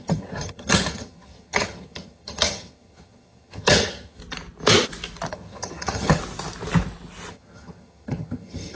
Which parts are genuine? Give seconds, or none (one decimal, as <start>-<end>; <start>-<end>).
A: 4.2-5.3; 6.2-7.3